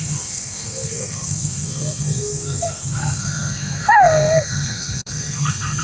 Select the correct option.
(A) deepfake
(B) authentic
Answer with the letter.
A